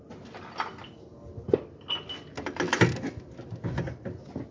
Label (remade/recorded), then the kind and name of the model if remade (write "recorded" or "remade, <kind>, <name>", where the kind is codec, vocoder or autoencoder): recorded